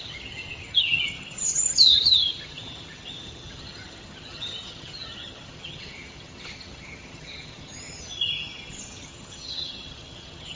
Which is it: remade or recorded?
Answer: remade